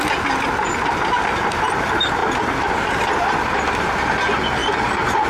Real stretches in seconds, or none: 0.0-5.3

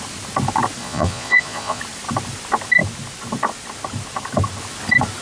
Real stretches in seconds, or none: 0.0-0.8; 1.8-5.2